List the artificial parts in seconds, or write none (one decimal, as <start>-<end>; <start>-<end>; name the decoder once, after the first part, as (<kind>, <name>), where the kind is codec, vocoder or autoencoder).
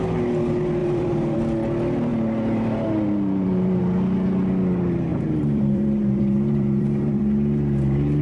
0.8-1.4 (vocoder, BigVGAN v2); 2.1-3.8; 5.1-7.2